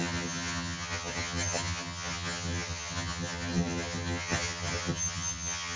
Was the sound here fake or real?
fake